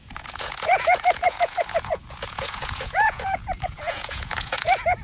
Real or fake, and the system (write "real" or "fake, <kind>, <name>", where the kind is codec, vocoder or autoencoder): fake, vocoder, Vocos